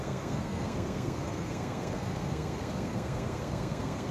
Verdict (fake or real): fake